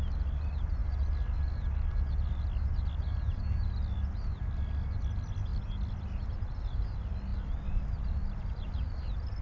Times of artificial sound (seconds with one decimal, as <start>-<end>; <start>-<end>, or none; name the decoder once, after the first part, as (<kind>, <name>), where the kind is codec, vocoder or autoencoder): none